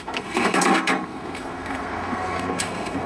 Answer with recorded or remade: remade